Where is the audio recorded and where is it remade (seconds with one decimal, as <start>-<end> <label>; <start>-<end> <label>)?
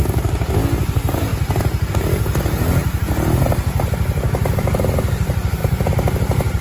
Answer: 0.0-6.6 recorded